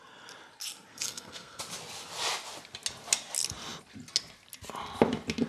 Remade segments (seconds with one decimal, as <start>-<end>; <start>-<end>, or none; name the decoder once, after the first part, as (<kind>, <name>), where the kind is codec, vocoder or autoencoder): 0.9-1.6 (codec, SNAC)